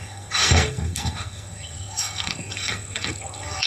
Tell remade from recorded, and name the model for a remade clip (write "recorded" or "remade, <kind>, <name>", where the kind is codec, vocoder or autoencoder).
remade, codec, SNAC